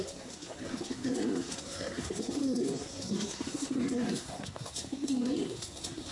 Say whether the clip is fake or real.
fake